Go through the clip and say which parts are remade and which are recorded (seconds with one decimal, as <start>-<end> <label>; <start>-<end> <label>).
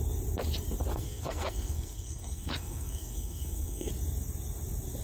0.0-0.9 recorded; 0.9-3.9 remade; 3.9-5.0 recorded